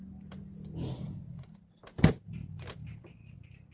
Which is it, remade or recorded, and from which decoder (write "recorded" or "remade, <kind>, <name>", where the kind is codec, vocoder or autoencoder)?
recorded